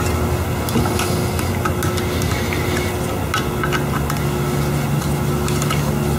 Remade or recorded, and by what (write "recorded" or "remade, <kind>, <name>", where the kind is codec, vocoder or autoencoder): recorded